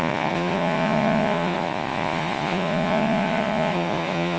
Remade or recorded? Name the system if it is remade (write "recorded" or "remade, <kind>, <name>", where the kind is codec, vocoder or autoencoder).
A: remade, vocoder, Vocos